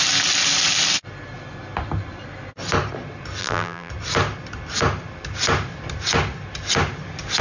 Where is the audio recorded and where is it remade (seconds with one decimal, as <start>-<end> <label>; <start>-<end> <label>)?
0.0-3.4 recorded; 3.4-3.9 remade; 3.9-7.4 recorded